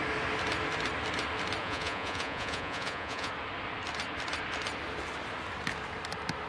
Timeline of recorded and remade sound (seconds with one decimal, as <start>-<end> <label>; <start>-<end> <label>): 0.0-1.6 recorded; 1.6-3.3 remade; 3.3-6.5 recorded